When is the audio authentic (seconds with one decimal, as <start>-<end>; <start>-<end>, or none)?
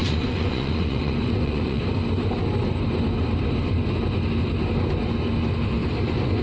1.8-6.4